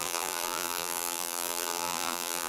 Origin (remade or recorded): remade